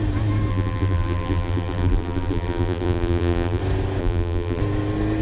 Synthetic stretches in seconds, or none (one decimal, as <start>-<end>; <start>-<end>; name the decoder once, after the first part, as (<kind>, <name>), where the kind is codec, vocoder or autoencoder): 0.5-3.6 (vocoder, BigVGAN v2); 4.0-4.6